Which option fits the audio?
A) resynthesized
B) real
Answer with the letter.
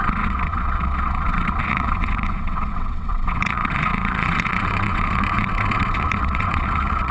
A